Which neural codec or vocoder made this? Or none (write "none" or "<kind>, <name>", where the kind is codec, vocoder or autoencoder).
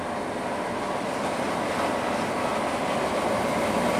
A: none